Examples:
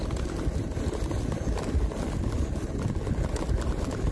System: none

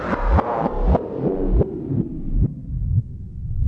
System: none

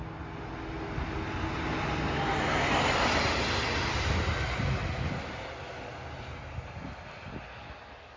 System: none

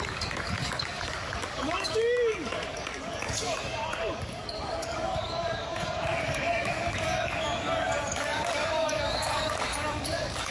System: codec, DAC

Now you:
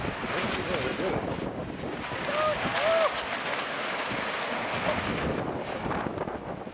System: none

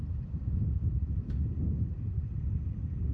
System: none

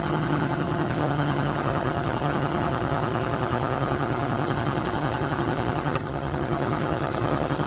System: vocoder, HiFi-GAN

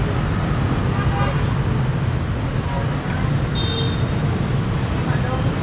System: none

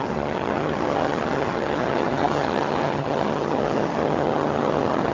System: vocoder, HiFi-GAN